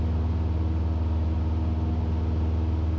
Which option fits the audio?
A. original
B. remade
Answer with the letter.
A